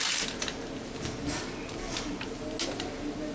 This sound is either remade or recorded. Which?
recorded